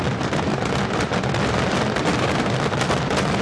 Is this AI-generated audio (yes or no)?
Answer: no